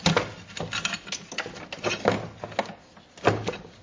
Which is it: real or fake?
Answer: real